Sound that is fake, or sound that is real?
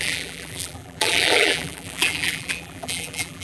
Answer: fake